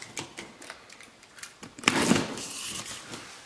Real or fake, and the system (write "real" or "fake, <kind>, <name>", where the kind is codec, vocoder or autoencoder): real